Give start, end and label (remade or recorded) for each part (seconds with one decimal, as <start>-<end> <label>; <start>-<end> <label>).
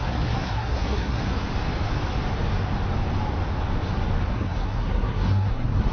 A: 0.0-1.2 remade; 1.2-4.2 recorded; 4.2-5.9 remade